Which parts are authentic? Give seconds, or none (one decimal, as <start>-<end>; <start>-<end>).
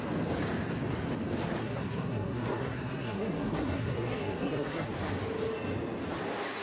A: 0.0-1.6; 4.9-6.6